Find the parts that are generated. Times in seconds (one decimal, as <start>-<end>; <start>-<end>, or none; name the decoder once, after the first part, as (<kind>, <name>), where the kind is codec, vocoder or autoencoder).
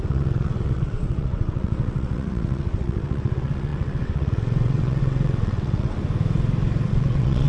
0.0-6.0 (vocoder, WaveNeXt); 6.9-7.5